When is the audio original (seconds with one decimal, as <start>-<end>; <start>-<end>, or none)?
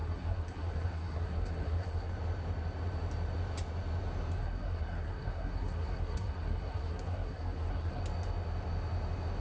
2.1-4.4; 8.0-9.4